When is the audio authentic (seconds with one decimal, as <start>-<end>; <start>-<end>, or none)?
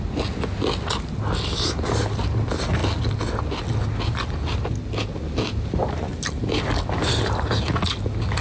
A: 0.0-8.4